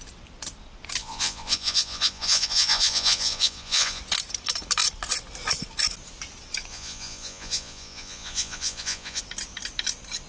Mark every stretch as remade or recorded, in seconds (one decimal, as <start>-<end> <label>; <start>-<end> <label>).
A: 0.0-1.0 recorded; 1.0-4.0 remade; 4.0-6.7 recorded; 6.7-9.2 remade; 9.2-10.3 recorded